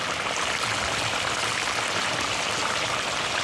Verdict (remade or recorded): recorded